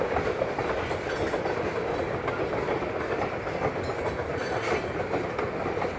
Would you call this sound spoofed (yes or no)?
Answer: no